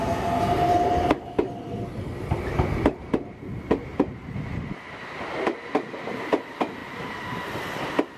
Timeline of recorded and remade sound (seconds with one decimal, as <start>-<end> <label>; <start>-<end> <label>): 0.0-3.9 recorded; 3.9-5.4 remade; 5.4-6.8 recorded; 6.8-7.4 remade; 7.4-8.2 recorded